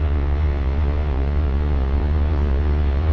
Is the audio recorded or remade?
remade